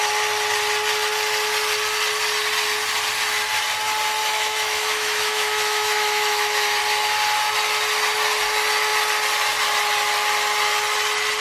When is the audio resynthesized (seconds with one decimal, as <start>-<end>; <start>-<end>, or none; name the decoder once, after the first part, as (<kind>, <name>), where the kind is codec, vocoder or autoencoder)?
4.2-6.8 (autoencoder, DAC-VAE)